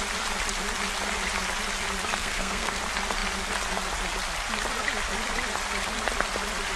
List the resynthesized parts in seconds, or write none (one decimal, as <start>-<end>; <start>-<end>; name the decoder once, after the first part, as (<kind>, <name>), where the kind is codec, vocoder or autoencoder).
2.2-2.8 (codec, SNAC)